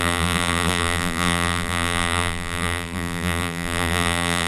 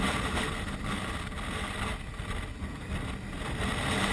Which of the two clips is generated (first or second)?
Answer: first